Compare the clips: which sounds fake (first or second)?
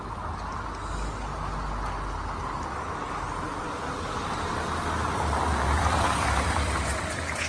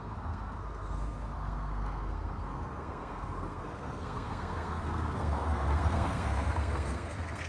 second